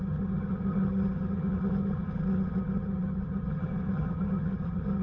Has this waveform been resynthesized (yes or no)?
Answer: yes